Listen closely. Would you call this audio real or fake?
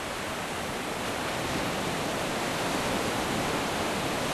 fake